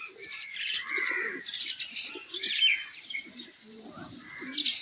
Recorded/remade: remade